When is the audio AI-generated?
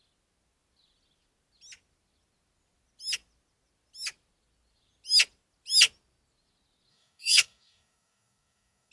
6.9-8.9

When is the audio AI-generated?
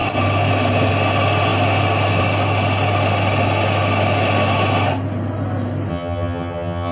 5.9-6.9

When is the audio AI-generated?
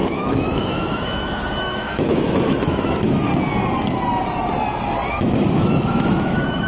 0.0-3.3; 5.1-6.7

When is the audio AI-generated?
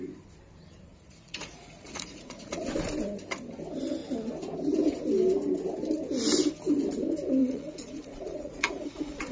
0.9-2.6; 7.4-9.3